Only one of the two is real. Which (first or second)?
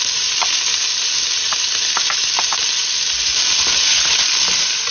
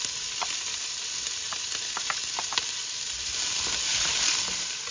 first